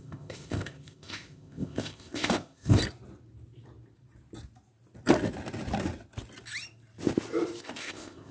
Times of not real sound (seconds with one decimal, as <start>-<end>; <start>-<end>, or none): 0.0-2.8; 7.6-8.3